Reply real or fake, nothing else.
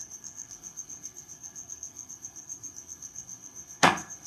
fake